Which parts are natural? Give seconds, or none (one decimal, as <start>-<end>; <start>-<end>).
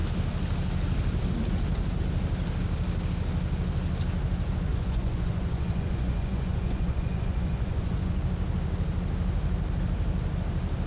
0.0-4.7; 8.2-10.9